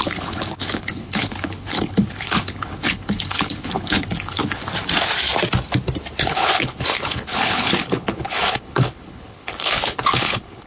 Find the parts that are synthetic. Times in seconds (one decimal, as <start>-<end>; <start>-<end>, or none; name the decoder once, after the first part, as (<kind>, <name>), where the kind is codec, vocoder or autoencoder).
0.0-4.6 (codec, HILCodec); 6.2-10.7